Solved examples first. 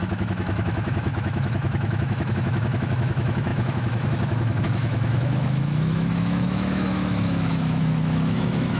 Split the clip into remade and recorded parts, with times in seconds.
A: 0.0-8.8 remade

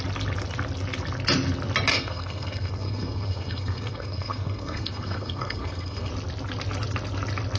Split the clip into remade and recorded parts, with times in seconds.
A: 0.0-1.9 recorded; 1.9-6.1 remade; 6.1-7.6 recorded

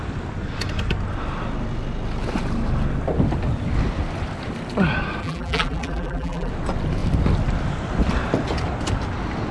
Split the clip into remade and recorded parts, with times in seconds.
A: 0.0-5.2 recorded; 5.2-6.5 remade; 6.5-9.5 recorded